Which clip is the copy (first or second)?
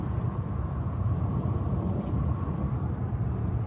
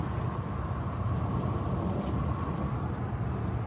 first